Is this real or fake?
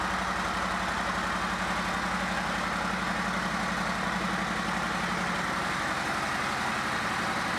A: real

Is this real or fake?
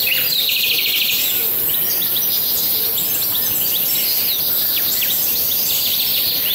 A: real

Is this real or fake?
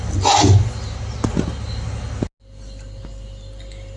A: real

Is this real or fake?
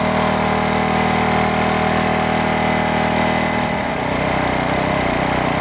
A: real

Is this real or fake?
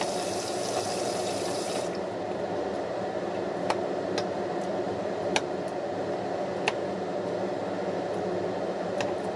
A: real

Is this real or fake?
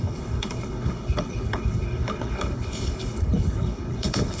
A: fake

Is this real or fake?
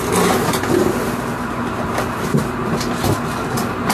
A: real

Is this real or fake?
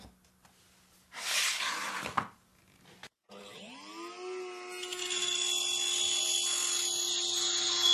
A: real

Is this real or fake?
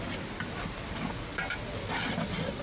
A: real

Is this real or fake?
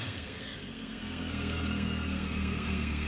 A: fake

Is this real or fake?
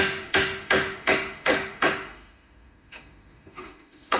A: fake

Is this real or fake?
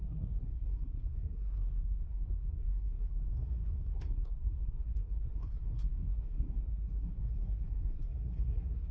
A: fake